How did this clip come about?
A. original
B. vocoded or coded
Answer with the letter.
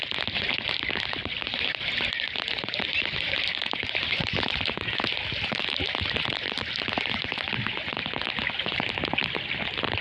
A